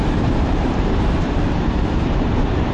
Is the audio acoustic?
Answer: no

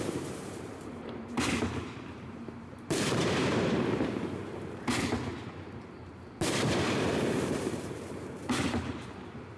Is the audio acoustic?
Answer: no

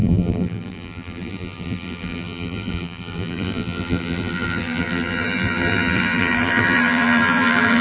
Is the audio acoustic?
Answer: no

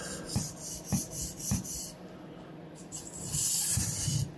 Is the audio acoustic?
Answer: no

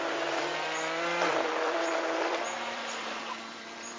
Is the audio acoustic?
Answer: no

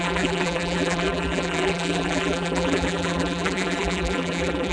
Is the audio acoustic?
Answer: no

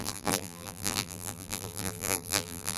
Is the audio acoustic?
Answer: no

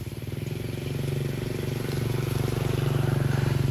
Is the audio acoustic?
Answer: yes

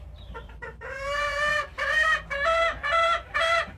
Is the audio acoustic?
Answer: no